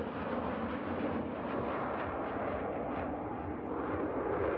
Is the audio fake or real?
real